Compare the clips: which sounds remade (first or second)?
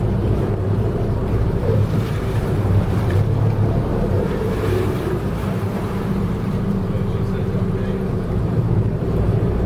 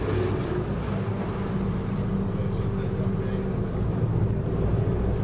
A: first